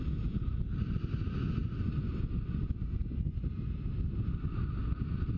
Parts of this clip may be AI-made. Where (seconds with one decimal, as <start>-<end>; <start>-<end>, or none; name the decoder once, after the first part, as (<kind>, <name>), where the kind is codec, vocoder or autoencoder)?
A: none